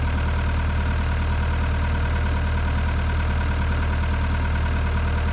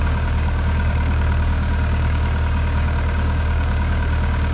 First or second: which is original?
first